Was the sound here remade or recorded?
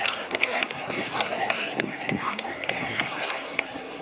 remade